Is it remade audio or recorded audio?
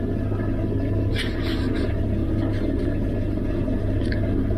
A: recorded